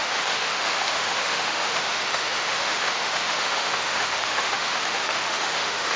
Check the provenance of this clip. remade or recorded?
remade